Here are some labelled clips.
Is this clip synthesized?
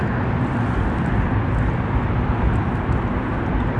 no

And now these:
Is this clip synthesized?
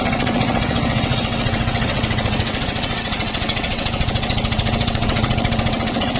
yes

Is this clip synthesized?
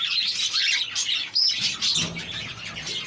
no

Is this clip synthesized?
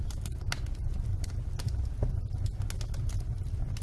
no